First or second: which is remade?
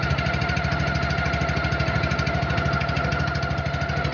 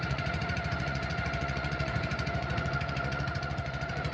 second